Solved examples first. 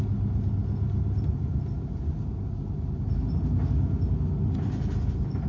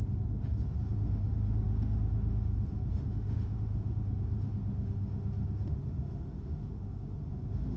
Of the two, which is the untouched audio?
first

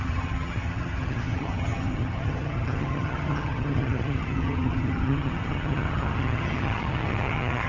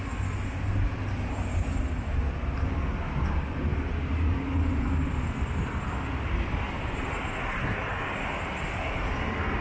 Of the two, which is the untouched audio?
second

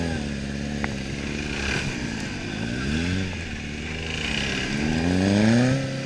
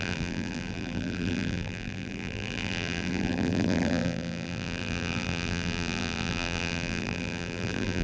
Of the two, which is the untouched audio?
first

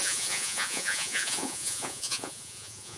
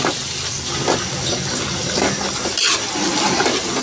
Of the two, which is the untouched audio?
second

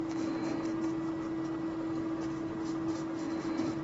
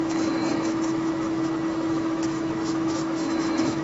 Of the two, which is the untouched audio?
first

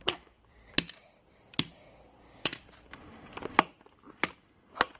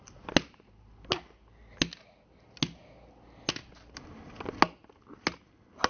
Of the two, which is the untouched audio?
second